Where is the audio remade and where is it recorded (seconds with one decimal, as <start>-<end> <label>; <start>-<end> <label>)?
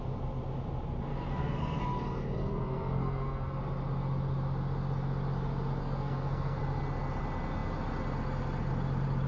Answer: 0.0-1.1 recorded; 1.1-1.8 remade; 1.8-2.4 recorded; 2.4-3.6 remade; 3.6-5.8 recorded; 5.8-6.6 remade; 6.6-9.3 recorded